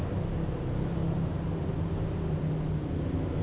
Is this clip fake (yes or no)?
no